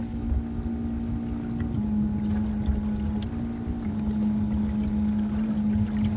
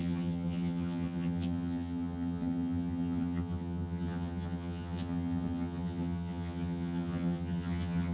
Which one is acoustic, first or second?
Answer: first